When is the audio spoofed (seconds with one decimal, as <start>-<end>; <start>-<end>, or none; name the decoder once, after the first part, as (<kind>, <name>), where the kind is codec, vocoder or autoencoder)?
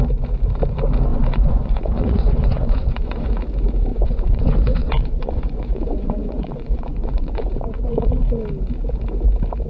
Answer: 1.1-3.3 (vocoder, Vocos); 3.9-8.1